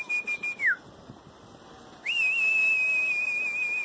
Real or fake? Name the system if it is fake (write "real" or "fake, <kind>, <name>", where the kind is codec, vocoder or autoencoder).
real